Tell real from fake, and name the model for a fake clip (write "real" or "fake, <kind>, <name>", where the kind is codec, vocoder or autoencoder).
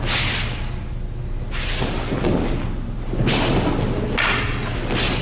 real